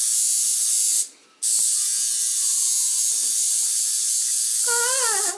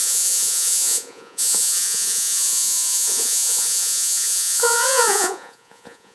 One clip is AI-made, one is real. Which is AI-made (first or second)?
second